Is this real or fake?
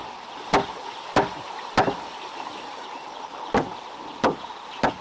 real